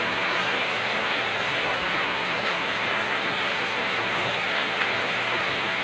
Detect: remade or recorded remade